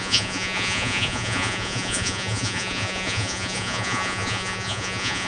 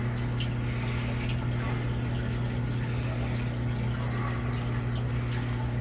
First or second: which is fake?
first